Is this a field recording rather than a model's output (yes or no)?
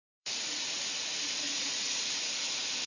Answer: no